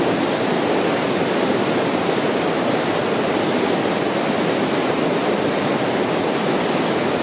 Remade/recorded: recorded